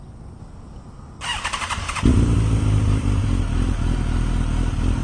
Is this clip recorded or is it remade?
recorded